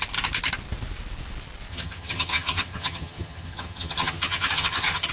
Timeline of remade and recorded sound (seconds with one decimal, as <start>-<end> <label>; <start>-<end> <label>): 0.0-1.7 recorded; 1.7-5.1 remade